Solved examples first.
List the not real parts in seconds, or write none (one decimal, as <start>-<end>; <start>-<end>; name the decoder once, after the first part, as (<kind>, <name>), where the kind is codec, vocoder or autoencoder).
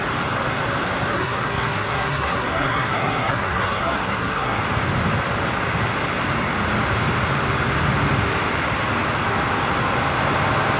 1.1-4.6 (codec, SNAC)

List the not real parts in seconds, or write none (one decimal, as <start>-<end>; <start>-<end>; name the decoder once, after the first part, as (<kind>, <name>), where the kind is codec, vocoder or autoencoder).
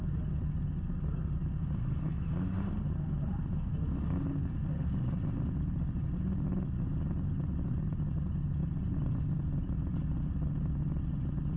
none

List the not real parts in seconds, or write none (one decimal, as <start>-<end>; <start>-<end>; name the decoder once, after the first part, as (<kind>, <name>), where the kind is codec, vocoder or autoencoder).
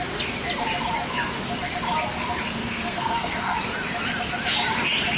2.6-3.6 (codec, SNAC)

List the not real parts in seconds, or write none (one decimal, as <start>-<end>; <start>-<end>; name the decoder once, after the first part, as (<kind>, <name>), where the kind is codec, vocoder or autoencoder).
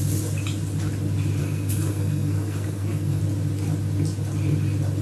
1.4-3.2 (codec, SNAC)